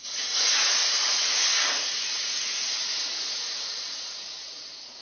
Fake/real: fake